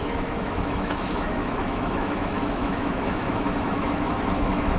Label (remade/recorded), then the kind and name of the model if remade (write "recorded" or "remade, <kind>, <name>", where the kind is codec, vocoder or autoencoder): remade, autoencoder, DAC-VAE